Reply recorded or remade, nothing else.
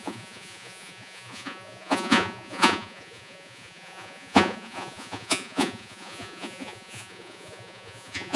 remade